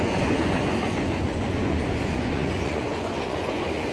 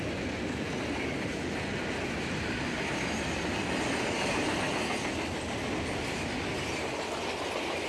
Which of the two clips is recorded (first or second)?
second